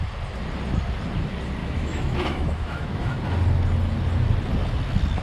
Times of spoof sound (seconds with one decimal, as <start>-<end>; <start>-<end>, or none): 1.6-3.2